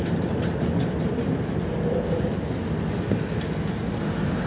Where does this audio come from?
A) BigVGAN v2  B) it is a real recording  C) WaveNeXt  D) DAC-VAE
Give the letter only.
B